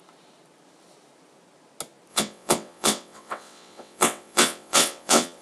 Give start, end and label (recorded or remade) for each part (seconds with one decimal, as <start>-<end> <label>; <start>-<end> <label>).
0.0-2.1 recorded; 2.1-5.4 remade